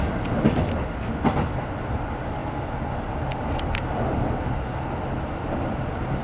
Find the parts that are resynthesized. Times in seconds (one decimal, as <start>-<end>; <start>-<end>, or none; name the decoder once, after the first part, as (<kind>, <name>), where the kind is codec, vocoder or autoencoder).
none